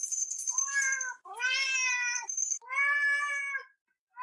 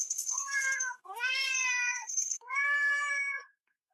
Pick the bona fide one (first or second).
first